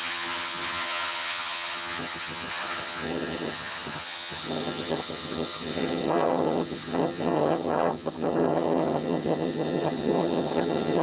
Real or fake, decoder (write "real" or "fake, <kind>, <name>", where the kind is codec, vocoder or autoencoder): fake, vocoder, HiFi-GAN